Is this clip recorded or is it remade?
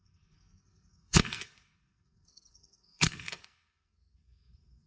remade